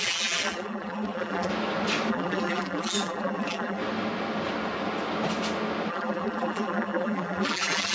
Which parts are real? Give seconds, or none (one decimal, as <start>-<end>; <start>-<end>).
1.5-2.1; 3.8-5.9